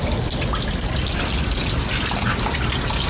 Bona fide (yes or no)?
yes